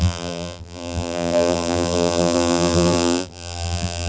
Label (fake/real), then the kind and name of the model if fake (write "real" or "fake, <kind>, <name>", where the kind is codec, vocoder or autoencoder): fake, vocoder, BigVGAN v2